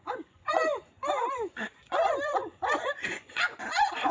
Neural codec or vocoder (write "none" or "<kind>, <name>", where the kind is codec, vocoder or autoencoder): vocoder, Vocos